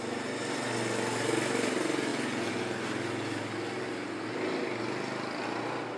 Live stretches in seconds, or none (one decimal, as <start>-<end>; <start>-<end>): 0.0-6.0